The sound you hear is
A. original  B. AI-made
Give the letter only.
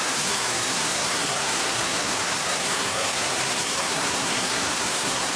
B